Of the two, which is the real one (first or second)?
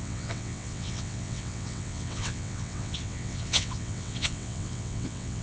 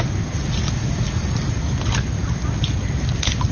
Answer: second